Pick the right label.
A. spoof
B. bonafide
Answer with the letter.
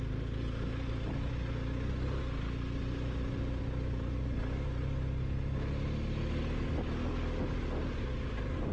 B